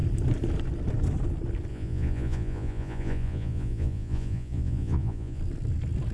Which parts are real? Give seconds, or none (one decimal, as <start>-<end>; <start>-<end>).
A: 0.0-1.7; 5.4-6.1